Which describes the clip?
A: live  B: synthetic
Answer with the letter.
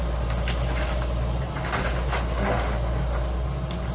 A